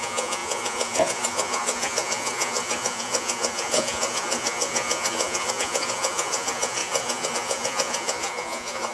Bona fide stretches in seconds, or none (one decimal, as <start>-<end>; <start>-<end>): none